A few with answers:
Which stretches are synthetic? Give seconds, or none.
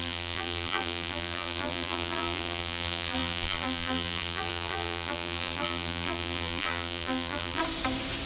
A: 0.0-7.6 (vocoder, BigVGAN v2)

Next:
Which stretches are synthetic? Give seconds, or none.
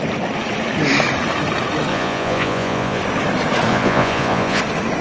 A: 1.9-3.0 (vocoder, Vocos); 3.7-4.6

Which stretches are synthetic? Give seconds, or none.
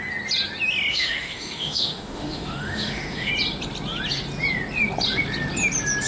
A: 0.9-3.3 (autoencoder, DAC-VAE)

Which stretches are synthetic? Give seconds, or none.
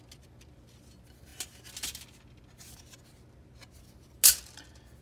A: none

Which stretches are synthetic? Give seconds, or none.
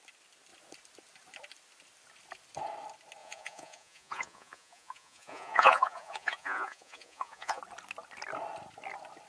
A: 3.2-7.6 (vocoder, Vocos)